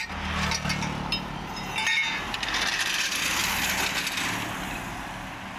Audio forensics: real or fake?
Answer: real